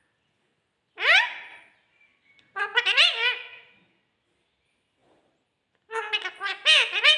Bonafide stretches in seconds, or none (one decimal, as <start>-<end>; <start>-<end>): 0.0-7.2